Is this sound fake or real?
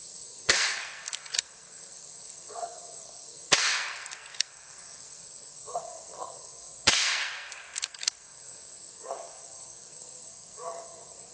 fake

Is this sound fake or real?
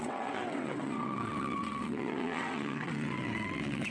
fake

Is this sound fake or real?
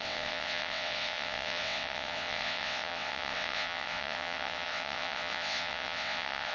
fake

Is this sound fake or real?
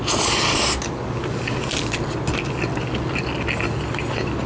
real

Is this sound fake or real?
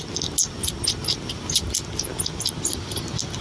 real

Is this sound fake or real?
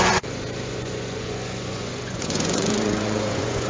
fake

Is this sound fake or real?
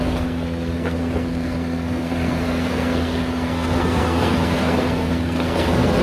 fake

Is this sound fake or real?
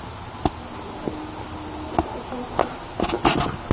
real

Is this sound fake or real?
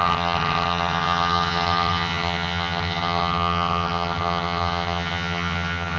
fake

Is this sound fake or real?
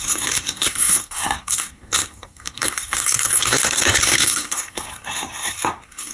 fake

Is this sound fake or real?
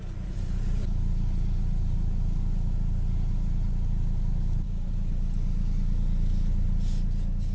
fake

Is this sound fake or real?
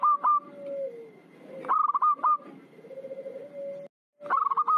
real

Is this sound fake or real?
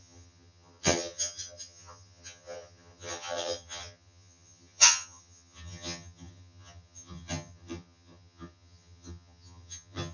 fake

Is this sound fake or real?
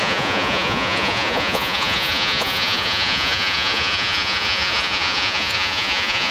fake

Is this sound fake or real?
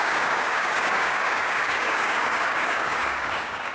fake